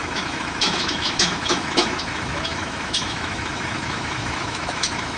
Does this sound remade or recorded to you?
remade